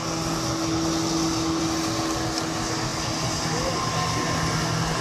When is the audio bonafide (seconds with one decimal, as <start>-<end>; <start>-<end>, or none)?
0.0-5.0

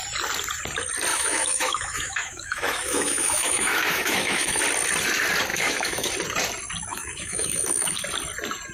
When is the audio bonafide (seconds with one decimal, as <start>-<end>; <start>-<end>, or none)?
0.0-1.1; 4.6-5.5; 6.1-6.9; 8.0-8.7

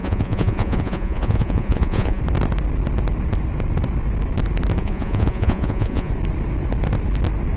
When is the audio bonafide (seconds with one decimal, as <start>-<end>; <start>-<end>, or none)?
2.2-4.8; 6.1-7.6

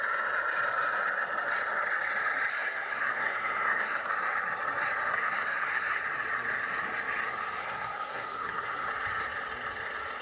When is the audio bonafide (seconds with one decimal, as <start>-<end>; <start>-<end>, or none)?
0.0-2.5; 4.1-5.1; 6.0-7.6; 8.9-10.2

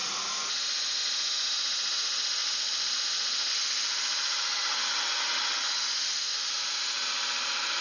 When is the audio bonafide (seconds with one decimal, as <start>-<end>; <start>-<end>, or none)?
0.0-2.4; 3.5-7.8

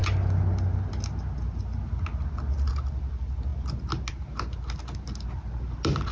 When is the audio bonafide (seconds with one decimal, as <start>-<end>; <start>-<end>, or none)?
0.0-6.1

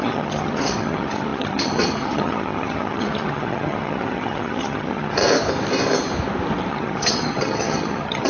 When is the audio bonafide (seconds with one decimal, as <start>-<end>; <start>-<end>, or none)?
5.2-6.7

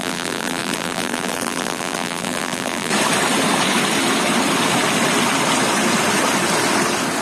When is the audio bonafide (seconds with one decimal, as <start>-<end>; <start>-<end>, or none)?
2.9-7.2